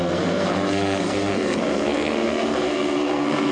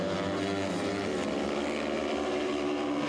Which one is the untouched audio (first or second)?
second